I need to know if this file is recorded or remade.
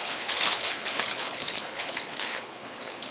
remade